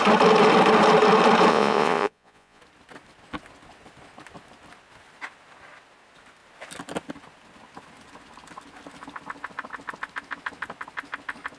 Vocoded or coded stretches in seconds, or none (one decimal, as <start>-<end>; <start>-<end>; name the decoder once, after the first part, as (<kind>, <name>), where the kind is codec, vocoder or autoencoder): 1.5-2.6 (vocoder, Vocos)